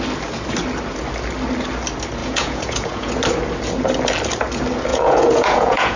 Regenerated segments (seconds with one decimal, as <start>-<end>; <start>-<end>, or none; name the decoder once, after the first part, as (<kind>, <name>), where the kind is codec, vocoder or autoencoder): 2.2-3.1 (vocoder, Vocos); 4.9-6.0